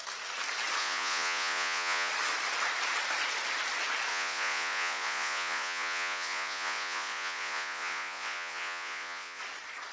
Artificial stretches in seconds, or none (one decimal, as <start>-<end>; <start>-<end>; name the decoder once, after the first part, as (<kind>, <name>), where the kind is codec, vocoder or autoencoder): 0.8-2.1 (vocoder, Vocos); 4.1-9.4